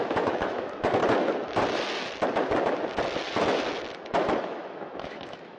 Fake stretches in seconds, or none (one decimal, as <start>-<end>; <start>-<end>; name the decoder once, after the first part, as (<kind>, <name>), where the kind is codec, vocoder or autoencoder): 0.0-1.0 (autoencoder, DAC-VAE); 4.4-5.6